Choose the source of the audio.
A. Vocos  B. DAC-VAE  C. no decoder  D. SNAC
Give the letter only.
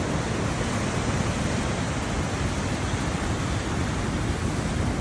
C